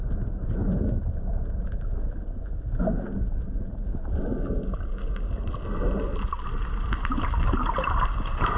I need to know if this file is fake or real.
real